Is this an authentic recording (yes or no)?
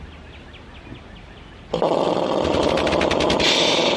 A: yes